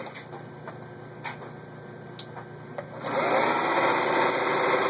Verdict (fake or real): real